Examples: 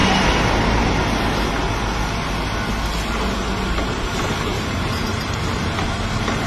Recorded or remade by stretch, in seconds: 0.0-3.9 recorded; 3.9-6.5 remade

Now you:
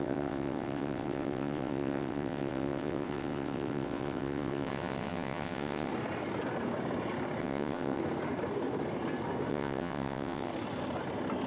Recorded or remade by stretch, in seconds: 0.0-5.9 remade; 5.9-7.4 recorded; 7.4-8.0 remade; 8.0-9.5 recorded; 9.5-10.5 remade; 10.5-11.5 recorded

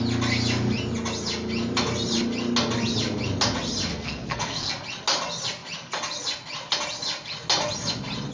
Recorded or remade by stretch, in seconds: 0.0-3.9 recorded; 3.9-4.7 remade; 4.7-8.3 recorded

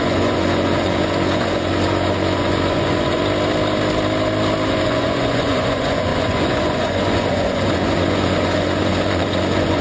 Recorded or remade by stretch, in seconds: 0.0-3.2 remade; 3.2-4.7 recorded; 4.7-9.8 remade